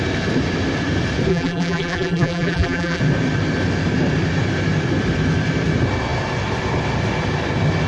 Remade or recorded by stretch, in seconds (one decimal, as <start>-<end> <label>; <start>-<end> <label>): 0.0-1.3 recorded; 1.3-3.0 remade; 3.0-7.9 recorded